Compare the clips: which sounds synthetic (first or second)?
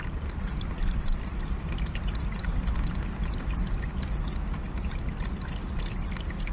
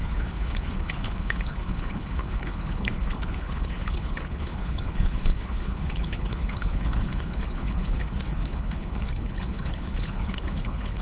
second